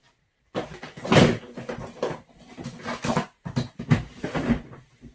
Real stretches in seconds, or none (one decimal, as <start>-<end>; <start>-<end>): 0.0-3.1